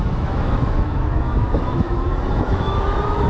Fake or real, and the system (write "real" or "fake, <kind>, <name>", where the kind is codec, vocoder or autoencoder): fake, autoencoder, DAC-VAE